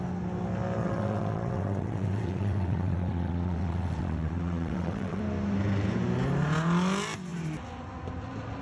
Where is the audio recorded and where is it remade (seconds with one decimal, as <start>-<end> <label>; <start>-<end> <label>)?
0.0-0.8 recorded; 0.8-5.2 remade; 5.2-8.6 recorded